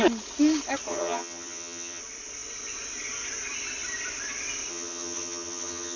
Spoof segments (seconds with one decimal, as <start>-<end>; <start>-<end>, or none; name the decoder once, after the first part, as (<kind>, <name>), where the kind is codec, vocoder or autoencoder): 0.9-2.0 (vocoder, HiFi-GAN); 4.7-6.0